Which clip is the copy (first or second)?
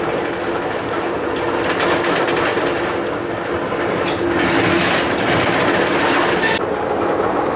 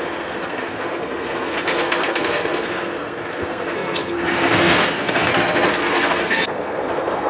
second